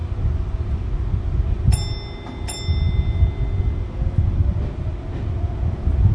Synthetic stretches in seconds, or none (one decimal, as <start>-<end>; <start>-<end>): none